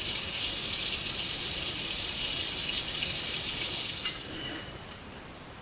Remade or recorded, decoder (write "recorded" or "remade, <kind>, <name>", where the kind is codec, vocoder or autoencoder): remade, vocoder, BigVGAN v2